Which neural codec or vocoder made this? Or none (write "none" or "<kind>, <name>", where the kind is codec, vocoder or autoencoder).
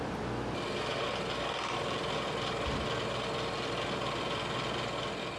none